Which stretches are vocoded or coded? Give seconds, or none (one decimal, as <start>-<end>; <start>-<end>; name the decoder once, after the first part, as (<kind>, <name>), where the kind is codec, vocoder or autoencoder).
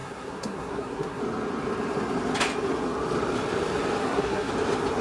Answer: 0.0-1.2 (codec, SNAC); 4.0-4.5